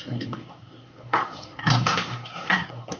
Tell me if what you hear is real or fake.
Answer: fake